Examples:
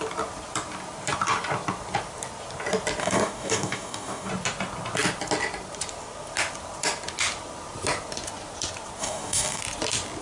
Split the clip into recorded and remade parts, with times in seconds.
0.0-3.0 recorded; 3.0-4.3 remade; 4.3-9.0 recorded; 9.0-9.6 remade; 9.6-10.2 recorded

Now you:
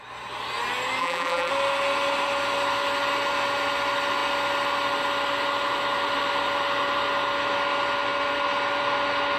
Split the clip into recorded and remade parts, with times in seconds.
0.0-1.0 recorded; 1.0-1.5 remade; 1.5-9.4 recorded

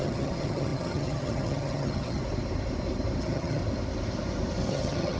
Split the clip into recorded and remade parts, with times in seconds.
0.0-2.2 remade; 2.2-3.2 recorded; 3.2-3.6 remade; 3.6-4.7 recorded; 4.7-5.2 remade